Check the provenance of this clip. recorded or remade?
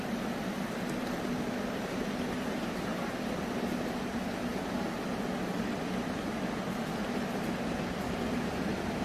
recorded